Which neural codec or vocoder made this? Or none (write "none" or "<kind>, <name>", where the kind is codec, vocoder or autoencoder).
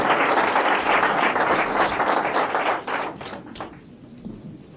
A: none